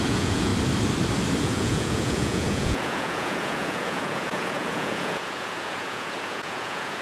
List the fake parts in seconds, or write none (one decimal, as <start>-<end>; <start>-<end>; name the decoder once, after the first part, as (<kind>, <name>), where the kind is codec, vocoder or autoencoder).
0.0-0.5 (vocoder, Vocos); 1.4-7.0

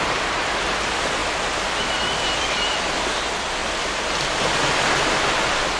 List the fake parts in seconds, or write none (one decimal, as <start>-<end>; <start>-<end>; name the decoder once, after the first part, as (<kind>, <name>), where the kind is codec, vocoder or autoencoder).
0.0-1.2 (vocoder, BigVGAN v2); 1.8-3.6; 4.7-5.8